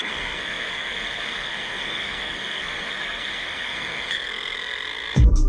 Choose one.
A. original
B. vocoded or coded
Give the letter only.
B